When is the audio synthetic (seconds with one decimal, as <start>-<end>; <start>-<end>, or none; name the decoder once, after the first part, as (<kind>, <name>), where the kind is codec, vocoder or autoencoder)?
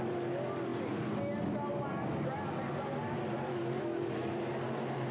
none